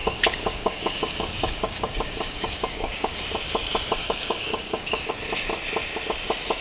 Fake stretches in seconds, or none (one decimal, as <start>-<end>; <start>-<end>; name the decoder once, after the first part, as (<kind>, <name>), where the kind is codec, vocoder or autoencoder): 0.0-3.2 (codec, DAC); 4.0-5.1